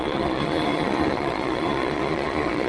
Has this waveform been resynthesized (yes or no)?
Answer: yes